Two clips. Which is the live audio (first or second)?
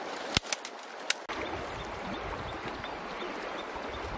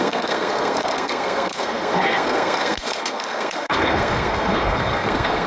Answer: first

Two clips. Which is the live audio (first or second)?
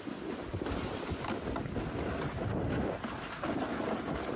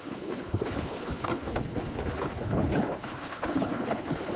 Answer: first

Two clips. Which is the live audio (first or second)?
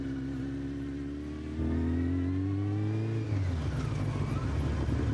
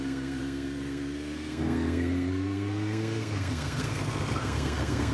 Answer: first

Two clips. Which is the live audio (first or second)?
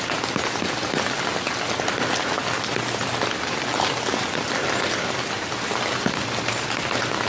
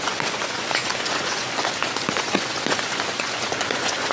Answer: first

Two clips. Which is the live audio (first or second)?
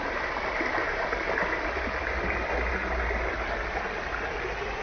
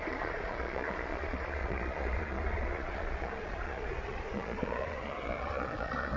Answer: first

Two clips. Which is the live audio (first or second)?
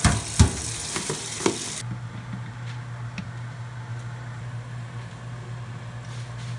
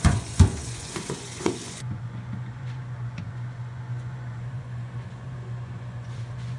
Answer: first